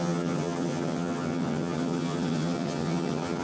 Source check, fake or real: fake